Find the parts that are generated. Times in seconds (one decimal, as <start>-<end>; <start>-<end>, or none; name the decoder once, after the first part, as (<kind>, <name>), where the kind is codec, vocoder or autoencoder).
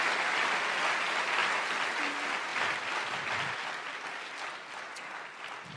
1.4-1.9 (vocoder, BigVGAN v2); 2.5-4.7